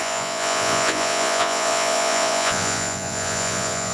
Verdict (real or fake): fake